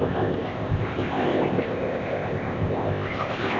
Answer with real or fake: fake